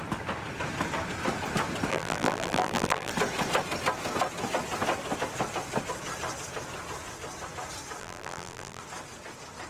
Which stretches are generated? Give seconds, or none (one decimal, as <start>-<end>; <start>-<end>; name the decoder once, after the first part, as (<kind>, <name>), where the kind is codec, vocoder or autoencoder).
1.9-3.1 (vocoder, BigVGAN v2); 8.0-8.8